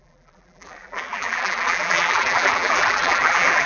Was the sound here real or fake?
fake